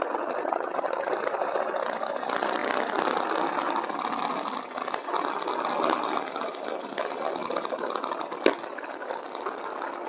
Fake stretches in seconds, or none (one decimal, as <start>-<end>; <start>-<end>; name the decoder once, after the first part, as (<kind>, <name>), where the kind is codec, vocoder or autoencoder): 0.4-1.1 (vocoder, HiFi-GAN)